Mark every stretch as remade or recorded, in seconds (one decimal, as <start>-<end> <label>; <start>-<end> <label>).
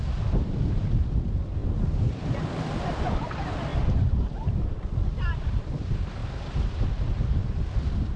0.0-3.7 recorded; 3.7-5.5 remade; 5.5-8.2 recorded